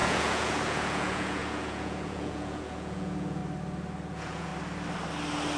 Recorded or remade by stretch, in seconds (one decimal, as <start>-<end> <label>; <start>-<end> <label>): 0.0-3.4 remade; 3.4-4.1 recorded; 4.1-4.5 remade; 4.5-5.6 recorded